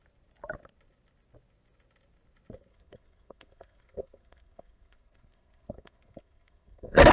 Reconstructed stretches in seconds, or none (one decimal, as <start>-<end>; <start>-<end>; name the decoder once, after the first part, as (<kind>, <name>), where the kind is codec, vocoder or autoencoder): 2.7-7.1 (codec, SNAC)